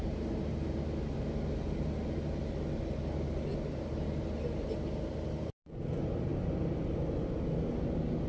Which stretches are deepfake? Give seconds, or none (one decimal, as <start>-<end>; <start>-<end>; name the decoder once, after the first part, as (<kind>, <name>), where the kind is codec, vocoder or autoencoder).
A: none